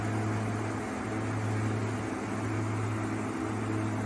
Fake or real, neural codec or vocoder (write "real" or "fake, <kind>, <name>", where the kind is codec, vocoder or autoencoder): real